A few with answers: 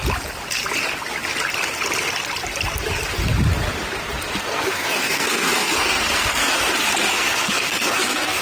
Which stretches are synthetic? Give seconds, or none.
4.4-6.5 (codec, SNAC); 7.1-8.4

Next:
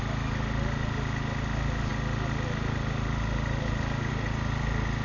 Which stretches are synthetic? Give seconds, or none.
none

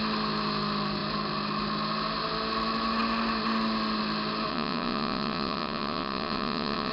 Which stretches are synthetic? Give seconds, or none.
4.5-6.9 (vocoder, WaveNeXt)

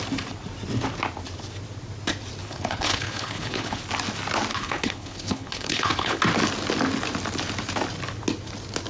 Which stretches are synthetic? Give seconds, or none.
2.4-3.8 (codec, HILCodec); 4.5-6.2

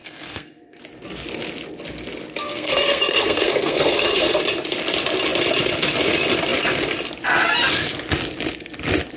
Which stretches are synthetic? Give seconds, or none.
0.0-0.8 (codec, SNAC); 2.4-4.4

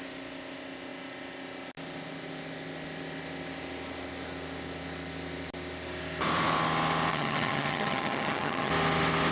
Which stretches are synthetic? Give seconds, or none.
7.1-8.7 (vocoder, HiFi-GAN)